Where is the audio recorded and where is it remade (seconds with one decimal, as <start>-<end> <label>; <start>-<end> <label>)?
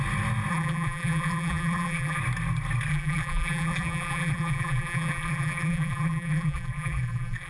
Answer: 0.0-0.5 recorded; 0.5-2.2 remade; 2.2-2.9 recorded; 2.9-7.5 remade